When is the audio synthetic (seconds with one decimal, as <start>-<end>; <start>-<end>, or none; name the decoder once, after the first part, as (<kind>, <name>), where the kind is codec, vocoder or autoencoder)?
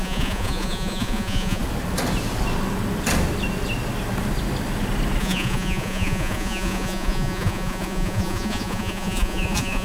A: 0.0-1.6 (vocoder, Vocos); 5.2-9.8